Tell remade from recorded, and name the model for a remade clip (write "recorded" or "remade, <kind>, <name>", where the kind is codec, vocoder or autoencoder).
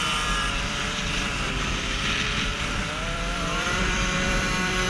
remade, vocoder, BigVGAN v2